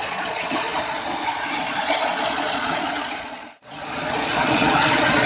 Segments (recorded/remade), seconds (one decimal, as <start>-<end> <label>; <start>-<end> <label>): 0.0-5.3 remade